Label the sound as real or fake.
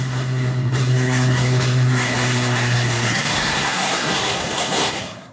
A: fake